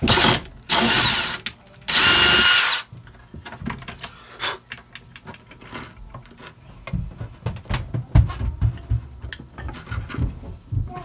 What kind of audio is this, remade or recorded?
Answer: recorded